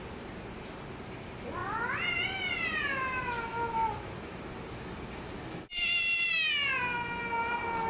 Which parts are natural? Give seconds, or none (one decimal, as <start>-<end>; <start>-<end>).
0.0-7.9